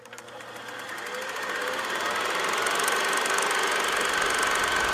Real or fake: real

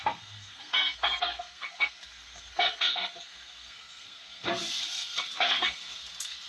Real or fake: fake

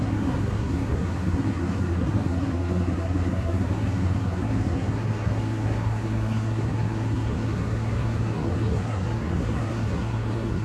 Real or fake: fake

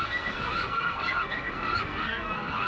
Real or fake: fake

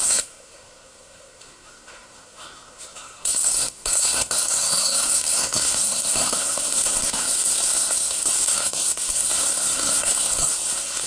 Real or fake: fake